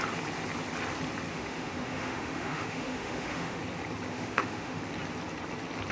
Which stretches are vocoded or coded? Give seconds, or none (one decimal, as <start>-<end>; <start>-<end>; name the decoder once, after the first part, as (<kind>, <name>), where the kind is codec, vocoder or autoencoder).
1.3-3.6 (autoencoder, DAC-VAE); 4.1-4.8